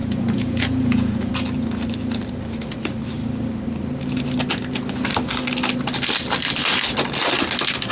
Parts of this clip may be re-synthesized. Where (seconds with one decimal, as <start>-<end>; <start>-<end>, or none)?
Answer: 0.0-1.3